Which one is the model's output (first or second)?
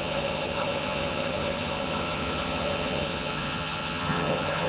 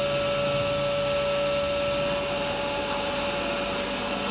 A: first